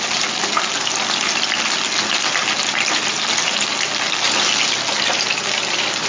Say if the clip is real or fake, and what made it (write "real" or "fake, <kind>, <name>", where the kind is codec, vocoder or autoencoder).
real